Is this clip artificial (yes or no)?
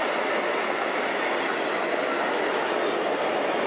no